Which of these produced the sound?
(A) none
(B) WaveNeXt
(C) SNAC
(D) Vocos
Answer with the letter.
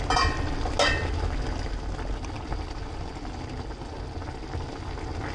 A